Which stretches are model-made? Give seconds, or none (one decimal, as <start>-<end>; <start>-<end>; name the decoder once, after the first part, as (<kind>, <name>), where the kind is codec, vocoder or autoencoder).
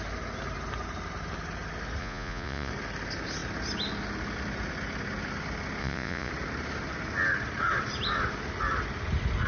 2.0-2.7 (vocoder, Vocos); 5.8-6.3